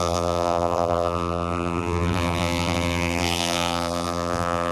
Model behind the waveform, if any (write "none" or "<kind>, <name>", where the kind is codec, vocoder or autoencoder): vocoder, BigVGAN v2